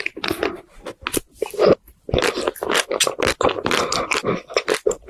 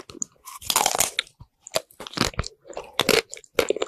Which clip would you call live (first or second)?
second